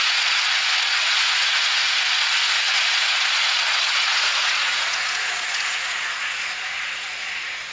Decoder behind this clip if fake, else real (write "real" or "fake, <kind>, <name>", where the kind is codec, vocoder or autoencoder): fake, vocoder, Vocos